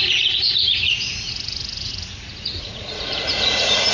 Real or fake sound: fake